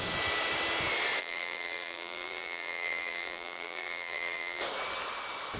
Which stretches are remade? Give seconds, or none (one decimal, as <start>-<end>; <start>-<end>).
1.2-4.6